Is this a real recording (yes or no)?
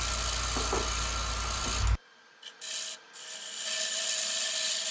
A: yes